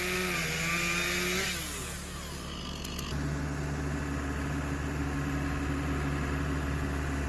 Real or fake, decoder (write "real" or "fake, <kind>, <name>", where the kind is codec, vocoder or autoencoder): real